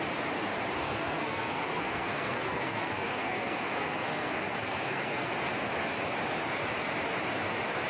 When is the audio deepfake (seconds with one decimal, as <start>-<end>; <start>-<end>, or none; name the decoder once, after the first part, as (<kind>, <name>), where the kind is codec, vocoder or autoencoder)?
0.8-5.3 (codec, SNAC)